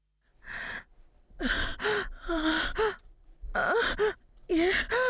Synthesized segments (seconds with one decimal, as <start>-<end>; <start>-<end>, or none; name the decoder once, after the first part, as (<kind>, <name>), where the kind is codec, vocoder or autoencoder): none